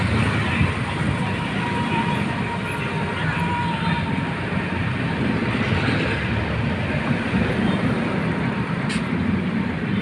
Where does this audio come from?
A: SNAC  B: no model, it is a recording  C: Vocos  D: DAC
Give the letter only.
B